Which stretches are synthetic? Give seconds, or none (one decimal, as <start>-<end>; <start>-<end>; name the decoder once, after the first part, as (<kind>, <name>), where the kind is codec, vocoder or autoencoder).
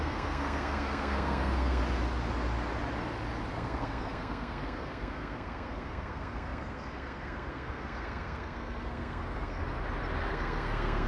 0.0-1.8 (codec, SNAC); 3.5-9.6; 10.3-11.1